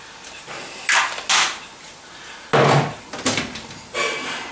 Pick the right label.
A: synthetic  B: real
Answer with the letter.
B